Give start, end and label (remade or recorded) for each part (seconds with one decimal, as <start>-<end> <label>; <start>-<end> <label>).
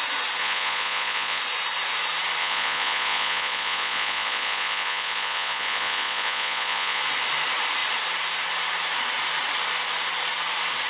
0.0-0.4 recorded; 0.4-1.4 remade; 1.4-2.4 recorded; 2.4-7.0 remade; 7.0-10.9 recorded